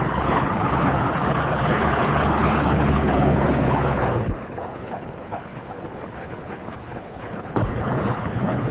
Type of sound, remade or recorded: remade